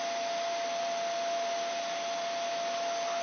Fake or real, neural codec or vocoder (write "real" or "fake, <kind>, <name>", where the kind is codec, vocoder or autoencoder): real